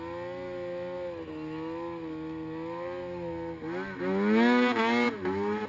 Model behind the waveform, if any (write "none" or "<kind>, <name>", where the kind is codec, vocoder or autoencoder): none